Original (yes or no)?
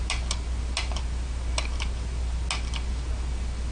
yes